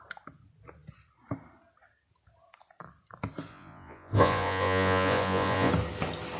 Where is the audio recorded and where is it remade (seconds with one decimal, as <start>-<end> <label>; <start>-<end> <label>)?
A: 0.0-3.5 recorded; 3.5-5.7 remade; 5.7-6.4 recorded